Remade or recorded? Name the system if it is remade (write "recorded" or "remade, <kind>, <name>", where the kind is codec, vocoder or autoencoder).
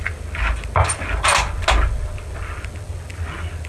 recorded